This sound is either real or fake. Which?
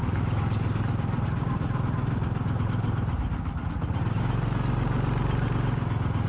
real